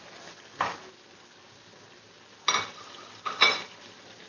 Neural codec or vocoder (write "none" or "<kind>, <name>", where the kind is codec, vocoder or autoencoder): none